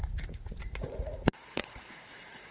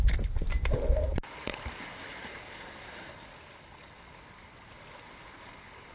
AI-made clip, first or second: first